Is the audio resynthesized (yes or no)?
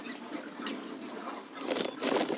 no